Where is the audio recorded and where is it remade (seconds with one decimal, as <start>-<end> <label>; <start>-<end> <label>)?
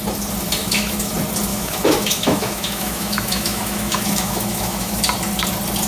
0.0-0.6 recorded; 0.6-1.1 remade; 1.1-1.5 recorded; 1.5-5.0 remade; 5.0-5.9 recorded